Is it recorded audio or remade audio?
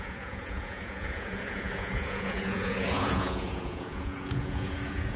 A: remade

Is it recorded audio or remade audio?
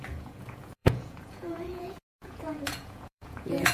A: remade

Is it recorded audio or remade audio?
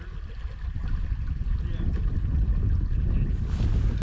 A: recorded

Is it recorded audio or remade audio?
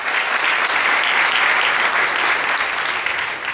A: recorded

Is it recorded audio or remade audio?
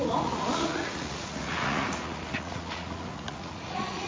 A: remade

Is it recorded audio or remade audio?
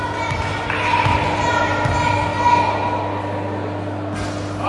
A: recorded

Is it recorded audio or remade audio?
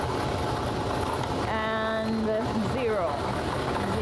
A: recorded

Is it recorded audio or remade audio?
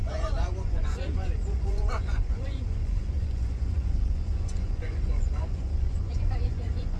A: remade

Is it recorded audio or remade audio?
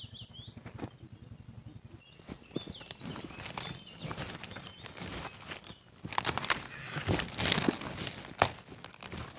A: recorded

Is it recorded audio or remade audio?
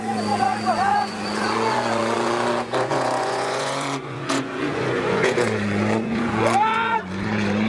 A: remade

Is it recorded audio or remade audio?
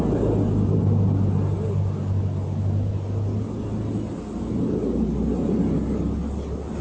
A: recorded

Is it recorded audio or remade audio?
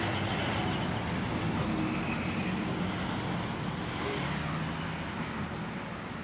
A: recorded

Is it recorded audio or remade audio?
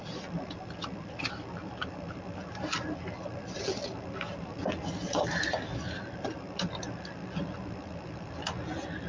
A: recorded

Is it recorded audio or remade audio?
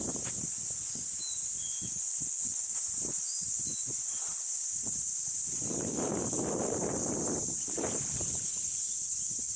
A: recorded